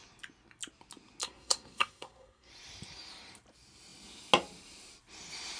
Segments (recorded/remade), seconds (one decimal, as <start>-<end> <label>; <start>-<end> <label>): 0.0-1.2 recorded; 1.2-2.5 remade; 2.5-5.6 recorded